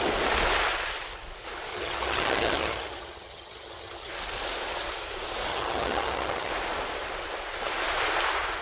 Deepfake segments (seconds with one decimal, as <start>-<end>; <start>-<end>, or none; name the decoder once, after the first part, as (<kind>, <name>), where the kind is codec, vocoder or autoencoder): 1.7-4.1 (vocoder, HiFi-GAN); 5.5-6.5